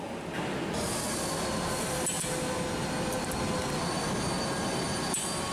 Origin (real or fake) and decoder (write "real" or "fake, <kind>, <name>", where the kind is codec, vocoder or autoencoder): real